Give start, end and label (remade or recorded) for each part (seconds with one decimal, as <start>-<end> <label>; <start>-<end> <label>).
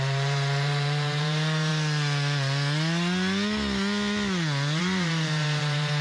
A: 0.0-1.7 remade; 1.7-4.8 recorded; 4.8-6.0 remade